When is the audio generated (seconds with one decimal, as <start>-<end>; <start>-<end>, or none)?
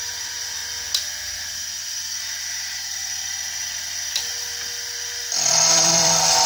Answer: 0.0-0.6; 2.4-6.5